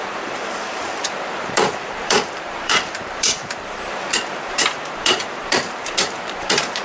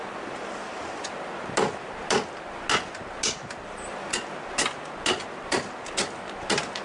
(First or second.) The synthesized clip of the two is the first